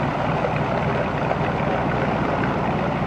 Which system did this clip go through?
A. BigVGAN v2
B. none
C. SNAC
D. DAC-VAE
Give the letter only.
B